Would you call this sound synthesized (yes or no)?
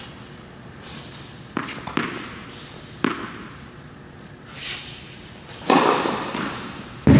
no